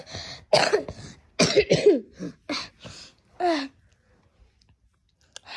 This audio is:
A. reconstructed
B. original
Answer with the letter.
B